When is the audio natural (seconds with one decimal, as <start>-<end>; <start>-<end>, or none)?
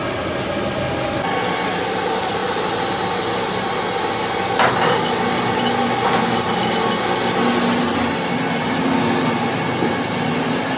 0.0-10.8